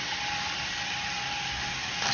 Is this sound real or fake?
real